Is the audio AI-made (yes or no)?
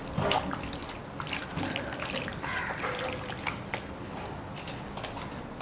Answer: no